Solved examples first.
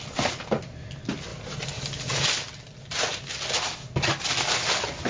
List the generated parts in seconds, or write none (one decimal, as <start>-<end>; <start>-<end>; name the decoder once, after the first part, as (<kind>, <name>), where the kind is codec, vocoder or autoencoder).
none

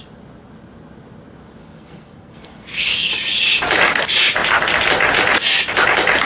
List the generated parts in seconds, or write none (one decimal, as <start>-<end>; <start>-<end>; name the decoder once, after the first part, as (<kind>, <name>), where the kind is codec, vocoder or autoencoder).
1.6-3.1 (codec, SNAC)

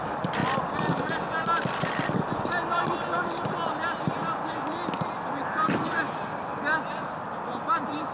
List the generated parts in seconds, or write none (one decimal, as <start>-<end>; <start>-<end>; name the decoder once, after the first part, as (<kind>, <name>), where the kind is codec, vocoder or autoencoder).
none

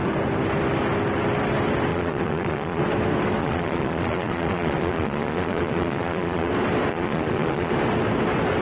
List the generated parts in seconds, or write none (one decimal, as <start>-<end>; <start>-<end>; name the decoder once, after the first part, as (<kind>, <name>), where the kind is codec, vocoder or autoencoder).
1.9-2.8 (vocoder, Vocos); 3.4-6.5; 6.9-7.7